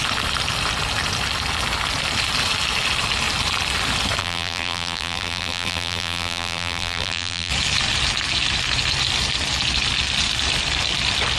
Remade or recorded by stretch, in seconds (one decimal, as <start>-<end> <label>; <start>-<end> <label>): 0.0-4.2 recorded; 4.2-7.5 remade; 7.5-11.4 recorded